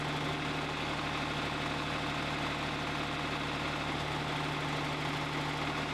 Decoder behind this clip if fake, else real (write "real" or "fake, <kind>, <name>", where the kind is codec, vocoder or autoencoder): real